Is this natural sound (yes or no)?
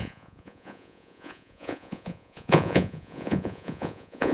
no